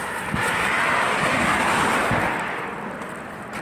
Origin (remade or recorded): recorded